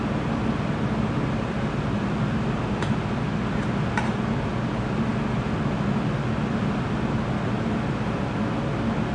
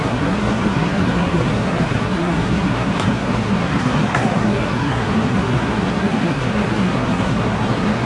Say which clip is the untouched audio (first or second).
first